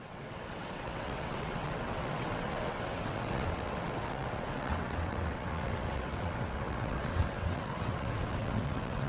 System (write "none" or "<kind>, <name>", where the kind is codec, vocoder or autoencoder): vocoder, WaveNeXt